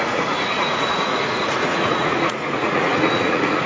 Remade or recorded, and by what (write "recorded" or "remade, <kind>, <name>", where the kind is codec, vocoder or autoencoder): remade, vocoder, Vocos